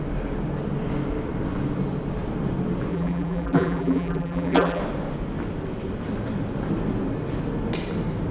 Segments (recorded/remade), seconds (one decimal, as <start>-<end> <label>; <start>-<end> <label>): 0.0-2.9 recorded; 2.9-4.8 remade; 4.8-8.3 recorded